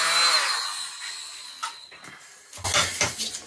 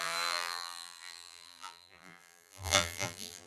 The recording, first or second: first